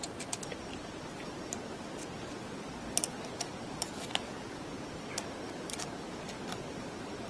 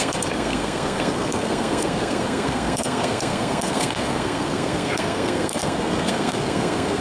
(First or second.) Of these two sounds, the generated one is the second